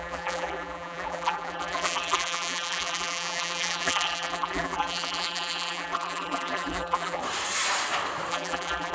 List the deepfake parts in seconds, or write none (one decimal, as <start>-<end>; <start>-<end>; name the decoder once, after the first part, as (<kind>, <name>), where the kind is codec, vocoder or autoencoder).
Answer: 0.0-7.2 (vocoder, BigVGAN v2); 8.3-8.9

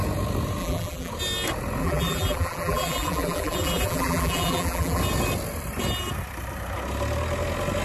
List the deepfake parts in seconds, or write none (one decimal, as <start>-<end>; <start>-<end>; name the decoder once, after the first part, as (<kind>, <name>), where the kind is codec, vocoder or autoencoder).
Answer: 0.6-1.1 (vocoder, BigVGAN v2); 1.8-5.0

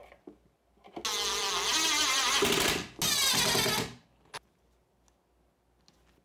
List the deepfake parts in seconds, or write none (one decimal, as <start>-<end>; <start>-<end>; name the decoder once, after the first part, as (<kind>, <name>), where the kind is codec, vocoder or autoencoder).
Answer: none